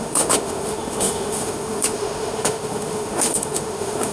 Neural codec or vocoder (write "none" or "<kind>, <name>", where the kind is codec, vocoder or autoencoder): autoencoder, DAC-VAE